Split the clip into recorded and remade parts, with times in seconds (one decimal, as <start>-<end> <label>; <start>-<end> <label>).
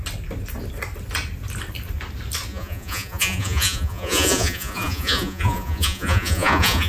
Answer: 0.0-2.5 recorded; 2.5-6.9 remade